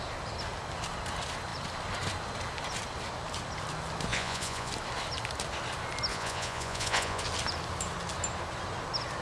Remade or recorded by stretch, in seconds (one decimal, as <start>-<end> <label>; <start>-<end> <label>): 0.0-4.1 recorded; 4.1-4.7 remade; 4.7-6.1 recorded; 6.1-7.2 remade; 7.2-9.2 recorded